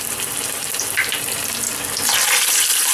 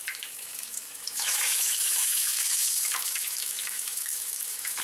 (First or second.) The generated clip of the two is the second